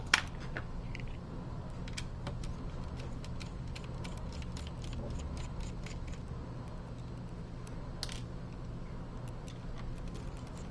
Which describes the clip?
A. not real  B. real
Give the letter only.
B